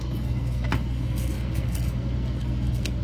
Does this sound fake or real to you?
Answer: fake